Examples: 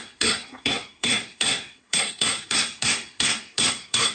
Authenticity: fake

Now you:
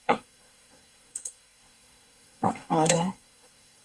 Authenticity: fake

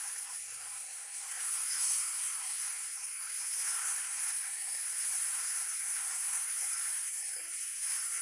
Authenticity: fake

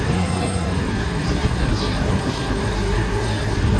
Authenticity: fake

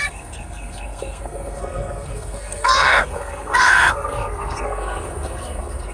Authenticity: fake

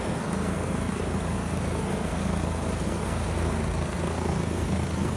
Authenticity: fake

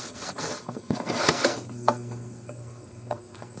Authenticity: fake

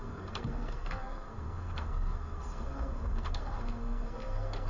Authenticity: fake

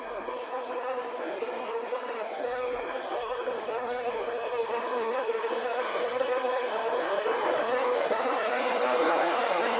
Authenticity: fake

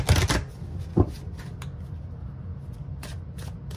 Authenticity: real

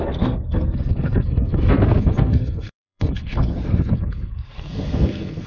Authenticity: fake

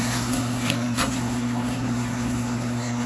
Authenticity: fake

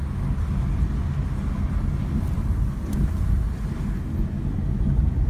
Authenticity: real